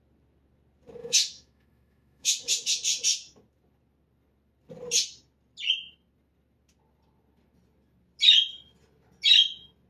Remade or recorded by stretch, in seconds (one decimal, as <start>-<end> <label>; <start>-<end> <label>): 0.0-1.0 recorded; 1.0-2.7 remade; 2.7-9.9 recorded